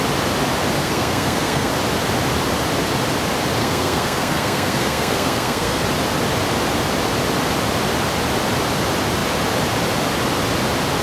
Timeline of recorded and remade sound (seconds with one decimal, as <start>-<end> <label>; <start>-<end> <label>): 0.0-0.8 recorded; 0.8-1.7 remade; 1.7-3.6 recorded; 3.6-5.8 remade; 5.8-11.0 recorded